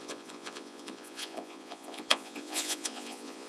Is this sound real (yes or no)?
no